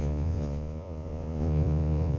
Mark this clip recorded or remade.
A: remade